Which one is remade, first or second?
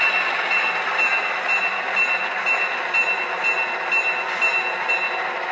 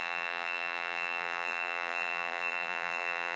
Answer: second